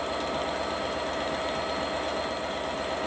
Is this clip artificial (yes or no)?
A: no